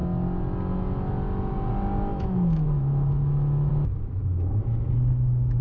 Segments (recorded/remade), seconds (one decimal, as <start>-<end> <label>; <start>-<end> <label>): 0.0-2.1 recorded; 2.1-3.7 remade; 3.7-4.2 recorded; 4.2-5.6 remade